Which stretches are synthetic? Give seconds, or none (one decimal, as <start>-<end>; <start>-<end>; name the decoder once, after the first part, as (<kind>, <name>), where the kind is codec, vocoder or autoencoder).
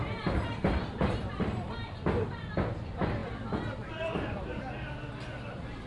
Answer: 0.0-5.9 (vocoder, BigVGAN v2)